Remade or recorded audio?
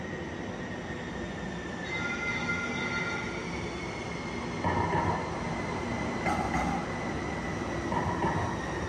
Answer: recorded